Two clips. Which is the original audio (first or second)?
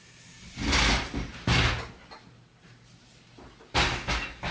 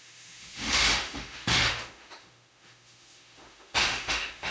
first